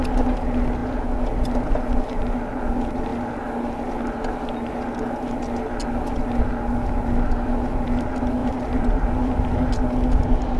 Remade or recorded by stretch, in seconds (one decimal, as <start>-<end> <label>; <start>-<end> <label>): 0.0-8.4 recorded; 8.4-9.7 remade; 9.7-10.6 recorded